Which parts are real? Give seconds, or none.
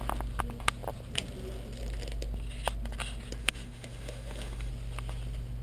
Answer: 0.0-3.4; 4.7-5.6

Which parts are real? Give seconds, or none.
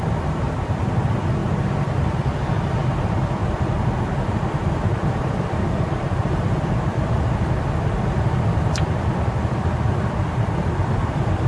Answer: 1.4-2.0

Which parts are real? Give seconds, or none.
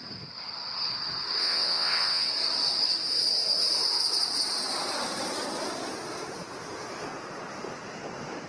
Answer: 0.0-1.4; 2.3-8.5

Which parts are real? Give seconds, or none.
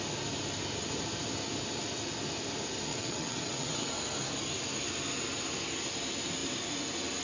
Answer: 0.0-2.9; 4.0-7.2